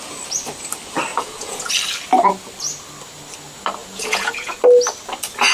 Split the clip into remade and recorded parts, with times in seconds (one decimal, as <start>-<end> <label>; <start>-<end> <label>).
0.0-1.1 recorded; 1.1-1.7 remade; 1.7-3.8 recorded; 3.8-4.6 remade; 4.6-5.5 recorded